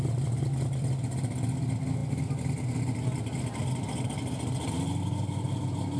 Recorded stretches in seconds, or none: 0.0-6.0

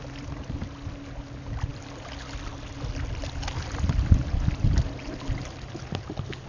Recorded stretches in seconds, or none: 0.0-6.5

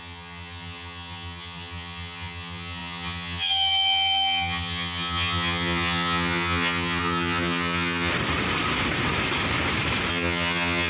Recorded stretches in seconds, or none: 8.1-10.1